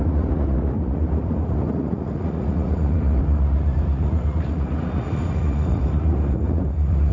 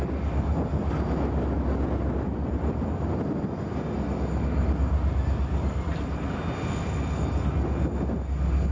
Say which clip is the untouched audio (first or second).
second